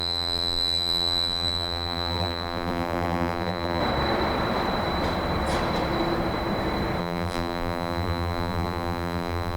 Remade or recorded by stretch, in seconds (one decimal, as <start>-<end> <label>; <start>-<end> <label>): 0.0-3.8 remade; 3.8-7.0 recorded; 7.0-9.6 remade